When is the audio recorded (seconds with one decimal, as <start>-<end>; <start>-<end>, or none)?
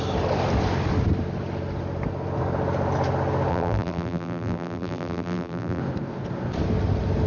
0.0-3.5; 5.8-7.3